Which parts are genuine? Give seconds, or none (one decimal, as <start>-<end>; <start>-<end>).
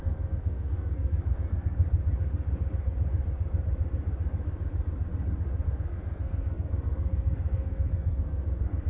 1.8-5.8